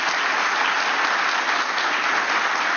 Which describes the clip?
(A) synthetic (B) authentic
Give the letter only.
B